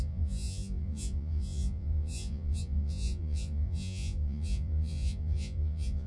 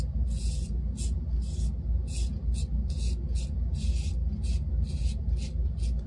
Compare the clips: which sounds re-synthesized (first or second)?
first